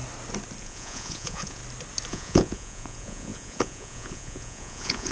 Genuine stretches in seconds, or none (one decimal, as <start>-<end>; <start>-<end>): 0.0-0.6; 1.6-2.1